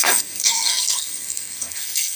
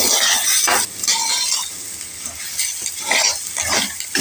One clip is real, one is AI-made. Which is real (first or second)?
second